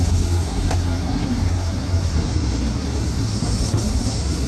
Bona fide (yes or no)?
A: no